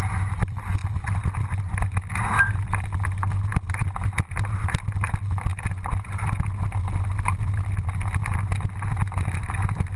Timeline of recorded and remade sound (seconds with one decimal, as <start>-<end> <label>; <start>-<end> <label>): 0.0-10.0 recorded